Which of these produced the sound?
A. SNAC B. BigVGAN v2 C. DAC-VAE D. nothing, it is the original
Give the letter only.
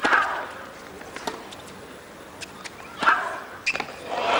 D